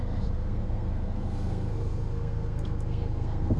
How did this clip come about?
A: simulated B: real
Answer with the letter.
A